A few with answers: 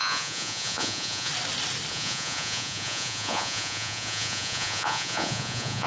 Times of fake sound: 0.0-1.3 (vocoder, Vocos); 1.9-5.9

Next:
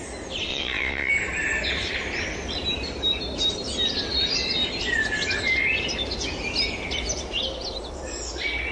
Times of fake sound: 0.5-1.1 (vocoder, Vocos)

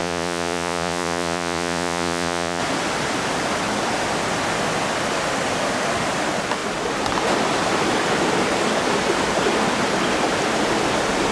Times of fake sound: 0.0-2.6 (vocoder, Vocos)

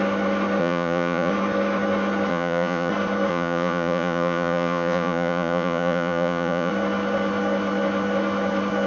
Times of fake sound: 0.6-1.3 (vocoder, Vocos); 2.3-2.9; 3.3-6.7

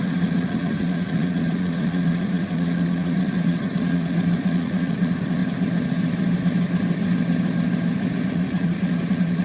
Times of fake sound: 0.0-5.4 (vocoder, Vocos); 8.3-9.4

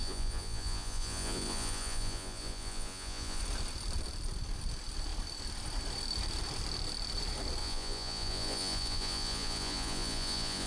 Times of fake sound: 0.0-3.4 (vocoder, Vocos); 7.6-10.7

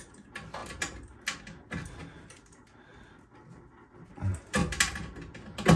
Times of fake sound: none